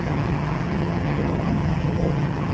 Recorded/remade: remade